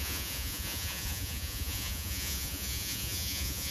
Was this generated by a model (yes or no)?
yes